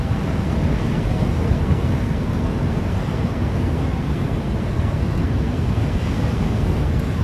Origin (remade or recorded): remade